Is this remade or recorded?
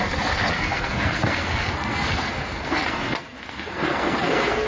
remade